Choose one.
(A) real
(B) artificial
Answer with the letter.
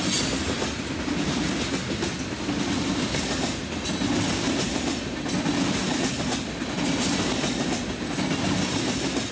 A